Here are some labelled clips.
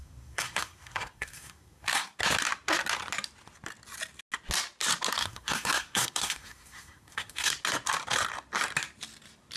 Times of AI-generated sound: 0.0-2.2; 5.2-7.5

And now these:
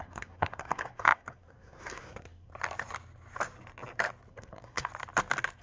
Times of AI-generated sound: 0.0-2.5; 4.3-4.9

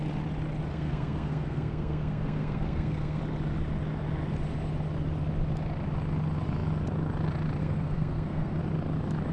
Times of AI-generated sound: 0.7-3.2; 7.6-8.6

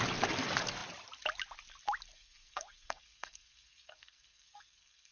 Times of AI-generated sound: 2.1-5.1

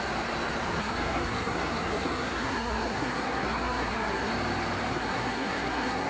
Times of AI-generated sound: 0.8-4.3; 4.9-6.1

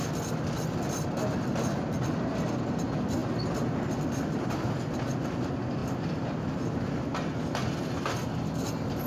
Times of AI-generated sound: none

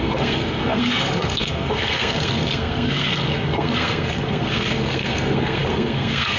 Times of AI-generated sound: 0.0-6.4

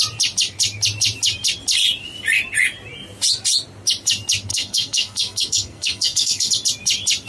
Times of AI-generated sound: 4.5-6.5